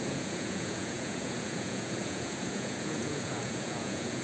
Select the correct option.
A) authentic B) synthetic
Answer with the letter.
B